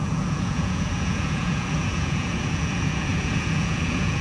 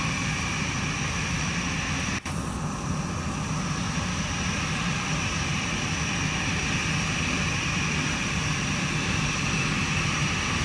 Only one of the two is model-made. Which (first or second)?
first